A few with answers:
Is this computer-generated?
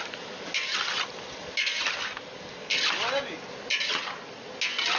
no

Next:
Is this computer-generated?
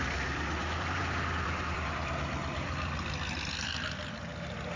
yes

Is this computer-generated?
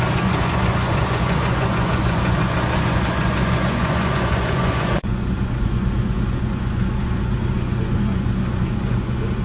yes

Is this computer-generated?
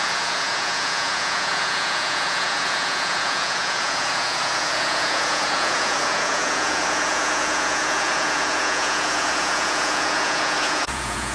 yes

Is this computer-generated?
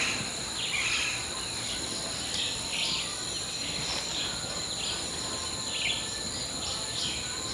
no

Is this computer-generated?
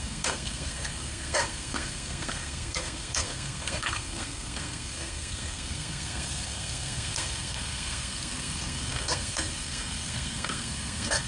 yes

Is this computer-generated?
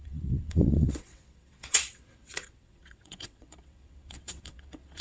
yes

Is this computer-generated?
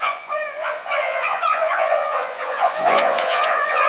yes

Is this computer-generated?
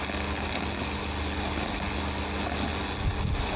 no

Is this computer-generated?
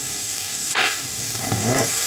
yes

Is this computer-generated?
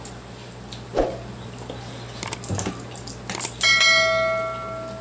no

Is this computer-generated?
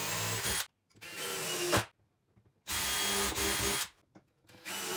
no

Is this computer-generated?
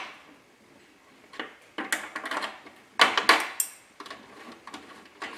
no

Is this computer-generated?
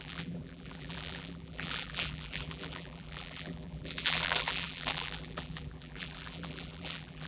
yes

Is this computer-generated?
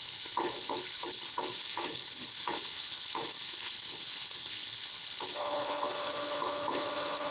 yes